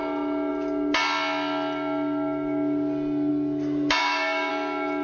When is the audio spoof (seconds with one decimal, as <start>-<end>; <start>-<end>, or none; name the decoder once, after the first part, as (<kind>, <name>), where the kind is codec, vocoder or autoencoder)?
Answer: 4.0-4.5 (codec, DAC)